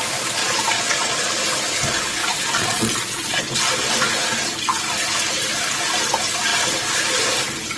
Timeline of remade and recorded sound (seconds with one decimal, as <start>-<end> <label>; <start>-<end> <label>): 0.0-0.4 recorded; 0.4-1.4 remade; 1.4-2.2 recorded; 2.2-3.4 remade; 3.4-7.8 recorded